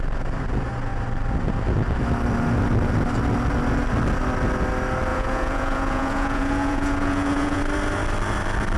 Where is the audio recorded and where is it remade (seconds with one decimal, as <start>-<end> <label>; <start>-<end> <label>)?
0.0-5.1 recorded; 5.1-7.6 remade; 7.6-8.8 recorded